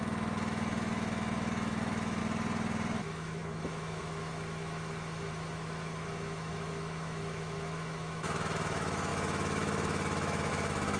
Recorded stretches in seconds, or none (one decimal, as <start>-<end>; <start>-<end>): 2.2-3.0